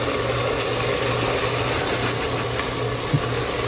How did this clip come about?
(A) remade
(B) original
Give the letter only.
B